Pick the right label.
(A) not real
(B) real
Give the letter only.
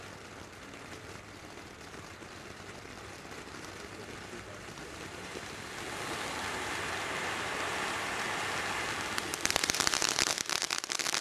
B